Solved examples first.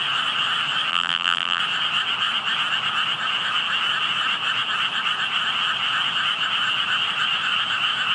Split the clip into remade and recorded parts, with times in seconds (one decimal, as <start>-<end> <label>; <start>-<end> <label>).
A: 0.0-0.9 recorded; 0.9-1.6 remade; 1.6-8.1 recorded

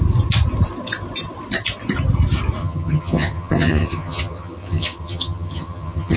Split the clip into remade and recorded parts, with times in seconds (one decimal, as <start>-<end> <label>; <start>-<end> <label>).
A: 0.0-2.6 recorded; 2.6-6.2 remade

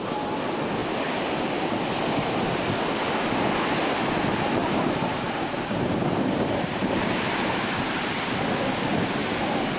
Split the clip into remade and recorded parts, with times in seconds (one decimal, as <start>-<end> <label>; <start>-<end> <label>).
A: 0.0-4.6 recorded; 4.6-8.0 remade; 8.0-9.8 recorded